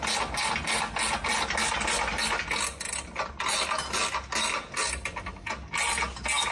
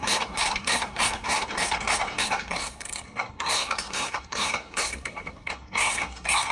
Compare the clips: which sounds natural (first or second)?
first